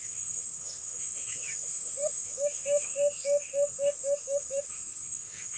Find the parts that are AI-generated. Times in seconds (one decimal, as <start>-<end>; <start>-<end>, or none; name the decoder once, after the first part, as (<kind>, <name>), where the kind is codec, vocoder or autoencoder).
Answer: 0.0-5.6 (autoencoder, DAC-VAE)